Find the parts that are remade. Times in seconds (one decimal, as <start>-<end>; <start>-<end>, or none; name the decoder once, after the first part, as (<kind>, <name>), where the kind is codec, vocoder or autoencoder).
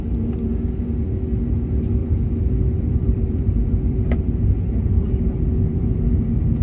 2.0-6.0 (vocoder, BigVGAN v2)